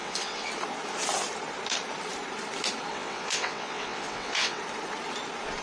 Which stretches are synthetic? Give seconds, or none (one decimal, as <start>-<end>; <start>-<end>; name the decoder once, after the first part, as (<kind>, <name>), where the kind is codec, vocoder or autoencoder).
0.0-0.5 (vocoder, WaveNeXt); 2.9-4.6